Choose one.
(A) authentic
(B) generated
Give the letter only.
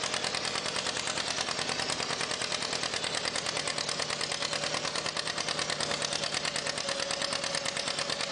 A